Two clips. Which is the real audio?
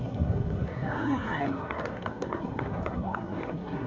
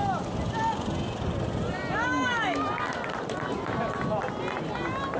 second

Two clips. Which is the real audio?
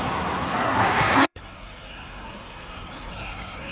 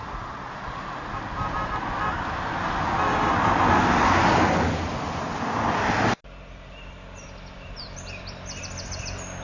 second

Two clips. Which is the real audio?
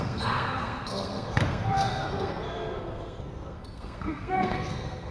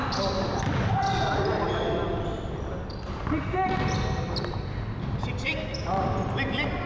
second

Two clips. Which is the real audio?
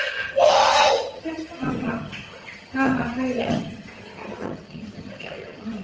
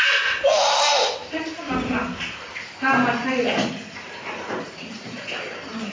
second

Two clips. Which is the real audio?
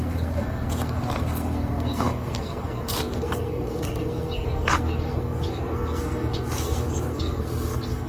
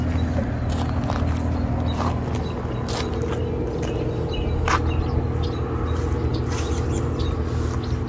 second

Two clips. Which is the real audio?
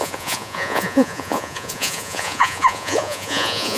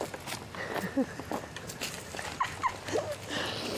second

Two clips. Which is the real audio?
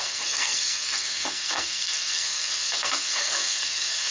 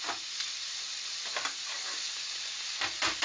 second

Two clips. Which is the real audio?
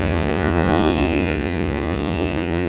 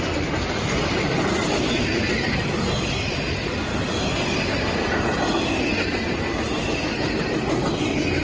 second